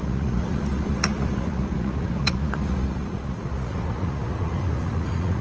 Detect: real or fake fake